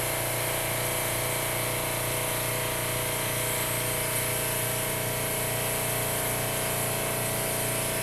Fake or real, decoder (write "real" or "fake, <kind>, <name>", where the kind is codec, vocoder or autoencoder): real